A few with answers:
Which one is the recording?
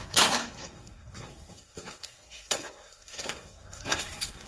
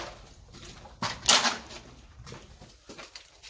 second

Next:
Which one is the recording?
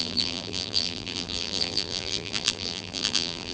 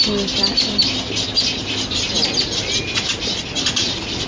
second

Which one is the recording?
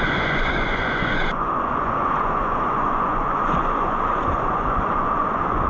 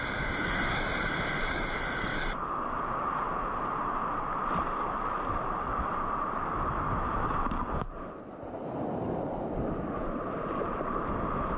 second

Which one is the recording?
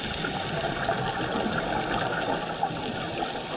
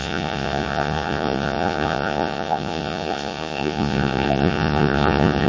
first